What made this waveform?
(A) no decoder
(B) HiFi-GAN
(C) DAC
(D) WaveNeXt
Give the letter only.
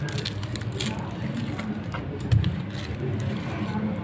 A